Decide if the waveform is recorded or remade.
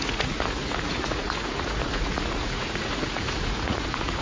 remade